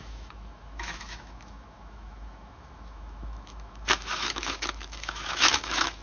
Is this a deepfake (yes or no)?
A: yes